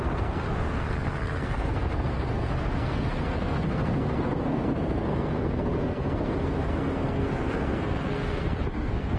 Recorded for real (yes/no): no